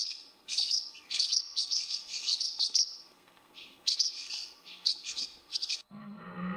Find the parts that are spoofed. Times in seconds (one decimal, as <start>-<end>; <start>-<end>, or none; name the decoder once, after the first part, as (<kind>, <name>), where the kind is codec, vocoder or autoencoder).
0.0-6.6 (codec, SNAC)